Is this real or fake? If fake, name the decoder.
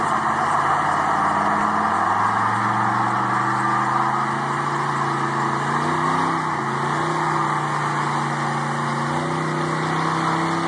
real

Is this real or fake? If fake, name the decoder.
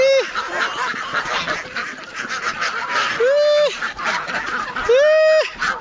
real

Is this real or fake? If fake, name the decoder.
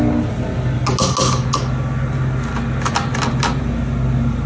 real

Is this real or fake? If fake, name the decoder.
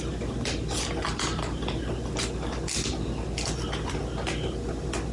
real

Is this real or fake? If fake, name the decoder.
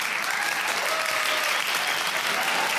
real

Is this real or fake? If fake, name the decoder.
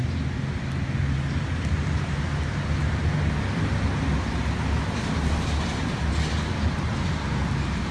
real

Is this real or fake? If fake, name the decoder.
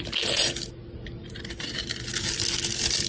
real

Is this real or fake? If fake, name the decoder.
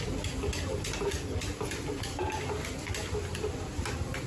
real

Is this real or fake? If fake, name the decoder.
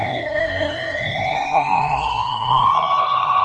fake, codec, SNAC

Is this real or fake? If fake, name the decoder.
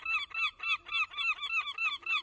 real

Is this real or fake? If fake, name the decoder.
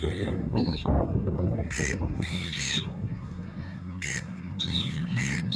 fake, codec, SNAC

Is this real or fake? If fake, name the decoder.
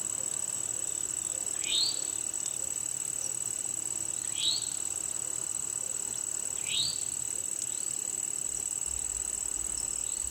real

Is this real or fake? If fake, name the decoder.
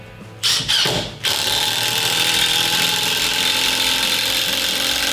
real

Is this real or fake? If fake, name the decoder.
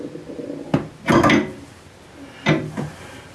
real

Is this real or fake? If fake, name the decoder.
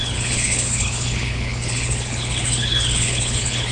fake, codec, HILCodec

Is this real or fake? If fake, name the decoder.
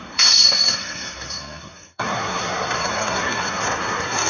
fake, codec, SNAC